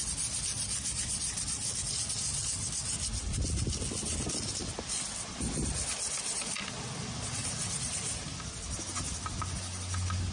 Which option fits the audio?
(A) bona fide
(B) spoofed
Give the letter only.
A